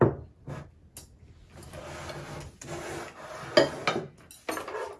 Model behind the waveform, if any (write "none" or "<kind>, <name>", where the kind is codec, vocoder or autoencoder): none